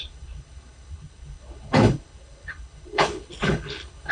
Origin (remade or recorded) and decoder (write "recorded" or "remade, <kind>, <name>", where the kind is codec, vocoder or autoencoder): remade, codec, HILCodec